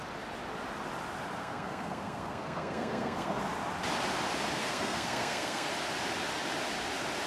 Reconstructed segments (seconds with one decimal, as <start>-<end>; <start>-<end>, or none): 1.4-3.4; 4.6-5.7